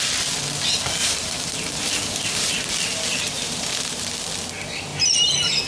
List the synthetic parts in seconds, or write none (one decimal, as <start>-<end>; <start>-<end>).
1.0-2.7; 3.1-4.1